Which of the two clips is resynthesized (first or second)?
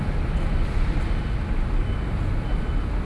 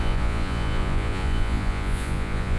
second